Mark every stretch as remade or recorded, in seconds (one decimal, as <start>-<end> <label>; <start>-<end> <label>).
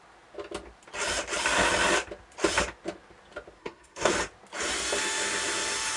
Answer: 0.0-3.6 recorded; 3.6-4.1 remade; 4.1-6.0 recorded